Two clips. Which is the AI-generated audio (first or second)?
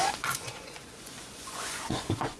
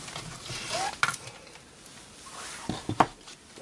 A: first